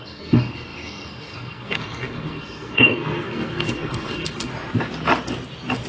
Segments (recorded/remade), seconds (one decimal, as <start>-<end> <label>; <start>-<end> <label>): 0.0-4.5 remade; 4.5-5.9 recorded